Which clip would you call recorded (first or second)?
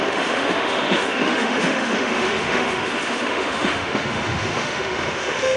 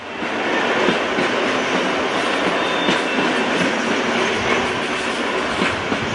second